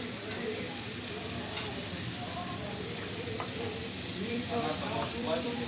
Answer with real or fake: fake